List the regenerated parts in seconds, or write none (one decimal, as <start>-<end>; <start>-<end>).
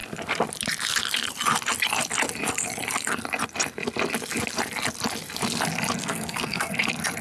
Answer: 6.0-6.7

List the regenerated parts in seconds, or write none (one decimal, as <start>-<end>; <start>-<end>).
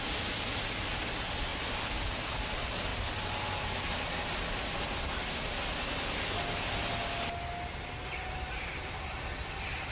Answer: none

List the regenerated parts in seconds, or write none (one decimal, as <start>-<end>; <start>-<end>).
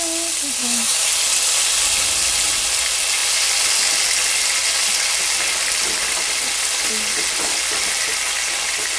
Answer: 0.6-1.1